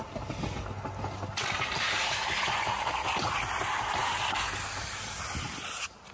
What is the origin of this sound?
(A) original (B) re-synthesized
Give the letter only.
A